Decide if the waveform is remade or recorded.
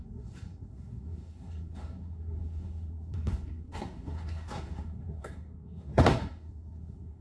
remade